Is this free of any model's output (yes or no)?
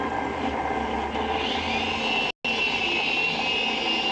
yes